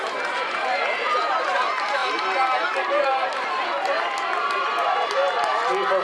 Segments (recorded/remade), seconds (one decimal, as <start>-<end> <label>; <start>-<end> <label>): 0.0-5.2 remade; 5.2-6.0 recorded